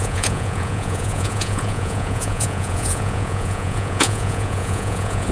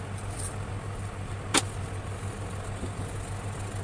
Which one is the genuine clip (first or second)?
second